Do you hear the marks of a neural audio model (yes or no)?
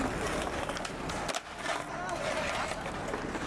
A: no